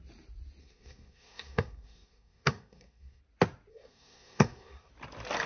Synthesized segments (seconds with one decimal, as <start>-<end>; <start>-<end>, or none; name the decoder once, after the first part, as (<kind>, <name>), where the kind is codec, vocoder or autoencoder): 0.6-3.2 (codec, SNAC); 3.7-4.9